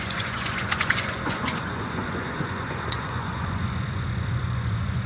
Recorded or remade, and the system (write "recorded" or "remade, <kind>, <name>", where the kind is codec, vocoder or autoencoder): remade, vocoder, Vocos